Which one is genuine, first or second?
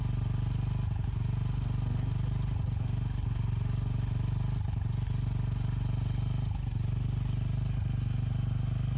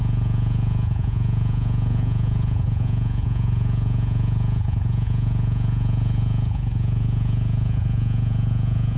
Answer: first